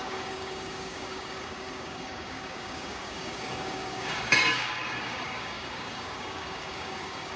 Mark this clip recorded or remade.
remade